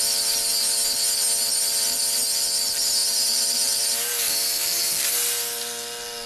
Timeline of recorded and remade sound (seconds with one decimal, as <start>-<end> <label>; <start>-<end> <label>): 0.0-3.0 recorded; 3.0-3.8 remade; 3.8-6.3 recorded